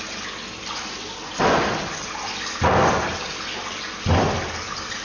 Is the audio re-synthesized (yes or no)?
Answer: no